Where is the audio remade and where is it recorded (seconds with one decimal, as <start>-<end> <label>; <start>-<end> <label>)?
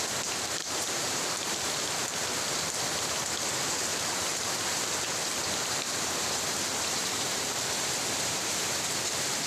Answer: 0.0-0.6 recorded; 0.6-1.2 remade; 1.2-3.9 recorded; 3.9-6.4 remade; 6.4-9.5 recorded